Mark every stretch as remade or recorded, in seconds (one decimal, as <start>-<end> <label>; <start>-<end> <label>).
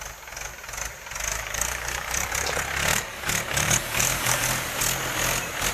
0.0-1.3 recorded; 1.3-2.3 remade; 2.3-2.9 recorded; 2.9-4.5 remade; 4.5-5.7 recorded